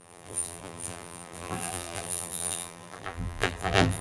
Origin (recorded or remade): remade